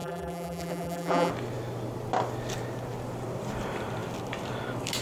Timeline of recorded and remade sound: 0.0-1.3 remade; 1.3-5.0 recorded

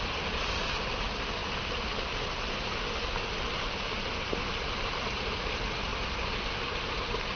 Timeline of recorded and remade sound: 0.0-7.4 recorded

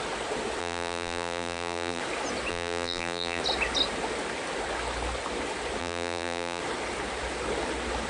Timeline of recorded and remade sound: 0.0-0.6 recorded; 0.6-2.0 remade; 2.0-2.5 recorded; 2.5-3.4 remade; 3.4-5.8 recorded; 5.8-6.6 remade; 6.6-8.1 recorded